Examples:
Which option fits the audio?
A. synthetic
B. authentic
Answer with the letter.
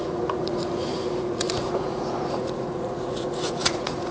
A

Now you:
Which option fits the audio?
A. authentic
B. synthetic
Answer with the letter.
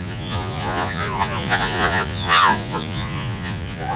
B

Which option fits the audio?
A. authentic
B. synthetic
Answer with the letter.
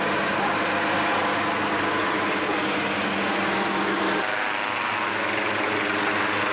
A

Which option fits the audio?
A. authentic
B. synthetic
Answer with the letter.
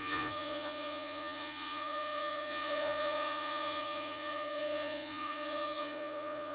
B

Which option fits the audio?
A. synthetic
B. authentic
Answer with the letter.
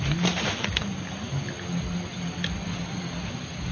B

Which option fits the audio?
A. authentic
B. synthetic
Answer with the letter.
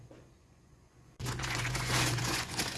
B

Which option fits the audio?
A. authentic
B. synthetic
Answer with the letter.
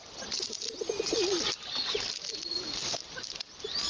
A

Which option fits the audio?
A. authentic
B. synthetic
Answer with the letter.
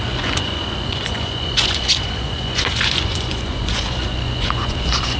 B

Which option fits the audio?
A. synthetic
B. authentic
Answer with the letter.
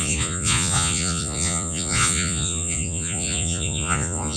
A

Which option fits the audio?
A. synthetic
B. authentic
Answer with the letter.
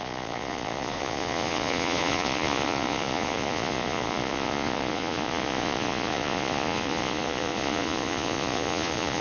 A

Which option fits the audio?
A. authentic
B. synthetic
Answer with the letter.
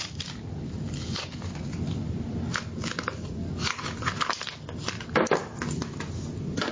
A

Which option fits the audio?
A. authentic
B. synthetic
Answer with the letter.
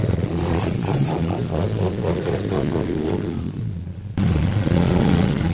B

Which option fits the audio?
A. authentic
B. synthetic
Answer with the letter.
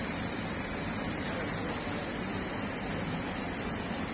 A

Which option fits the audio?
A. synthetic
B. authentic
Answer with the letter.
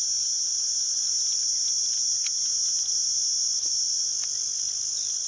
B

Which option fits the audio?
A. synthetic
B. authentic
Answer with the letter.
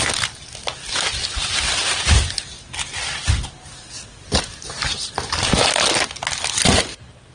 B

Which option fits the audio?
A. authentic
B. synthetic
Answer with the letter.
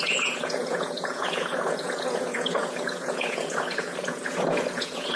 B